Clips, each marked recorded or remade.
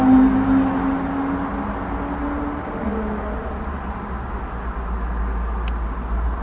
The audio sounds recorded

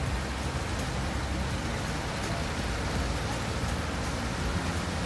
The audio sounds recorded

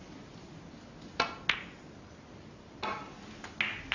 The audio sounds recorded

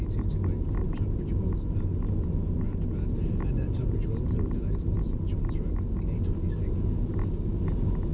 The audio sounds recorded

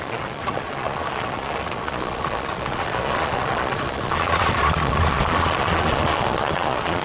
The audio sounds remade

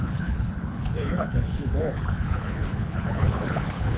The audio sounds remade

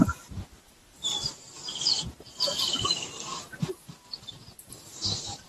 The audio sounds remade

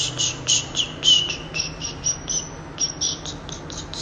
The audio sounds recorded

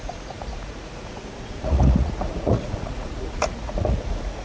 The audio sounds remade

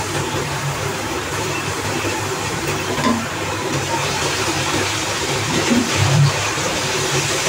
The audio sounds remade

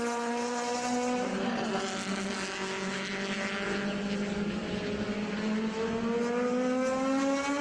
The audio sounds recorded